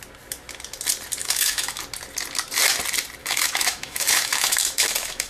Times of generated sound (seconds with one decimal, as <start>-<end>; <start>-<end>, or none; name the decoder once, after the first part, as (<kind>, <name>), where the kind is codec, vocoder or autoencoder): 1.2-1.8 (autoencoder, DAC-VAE); 3.2-5.3